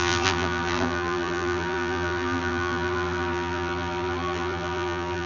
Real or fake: fake